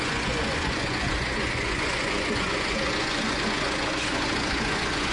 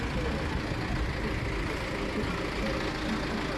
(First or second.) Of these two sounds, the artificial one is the first